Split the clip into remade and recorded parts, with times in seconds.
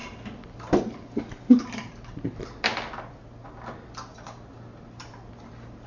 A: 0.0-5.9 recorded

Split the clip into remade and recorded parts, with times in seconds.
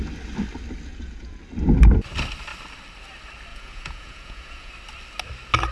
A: 0.0-0.9 recorded; 0.9-1.4 remade; 1.4-3.5 recorded; 3.5-4.7 remade; 4.7-5.7 recorded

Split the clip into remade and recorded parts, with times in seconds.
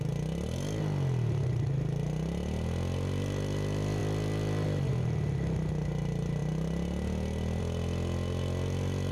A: 0.0-9.1 recorded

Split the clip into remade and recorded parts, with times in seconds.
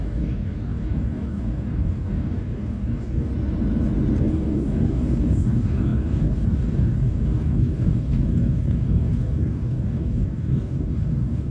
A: 0.0-3.3 remade; 3.3-4.2 recorded; 4.2-11.5 remade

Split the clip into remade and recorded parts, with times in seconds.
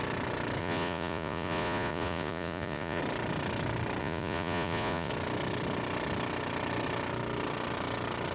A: 0.0-0.6 recorded; 0.6-3.0 remade; 3.0-4.0 recorded; 4.0-5.1 remade; 5.1-8.3 recorded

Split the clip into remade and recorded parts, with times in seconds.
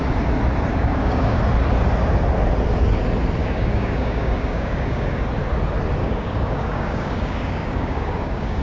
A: 0.0-0.7 recorded; 0.7-1.4 remade; 1.4-3.4 recorded; 3.4-5.2 remade; 5.2-6.0 recorded; 6.0-8.6 remade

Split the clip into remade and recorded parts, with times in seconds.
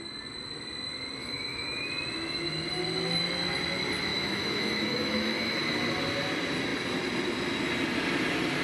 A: 0.0-1.2 recorded; 1.2-1.9 remade; 1.9-4.1 recorded; 4.1-5.6 remade; 5.6-8.6 recorded